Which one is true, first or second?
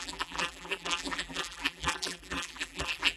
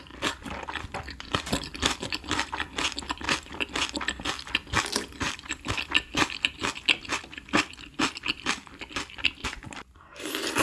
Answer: second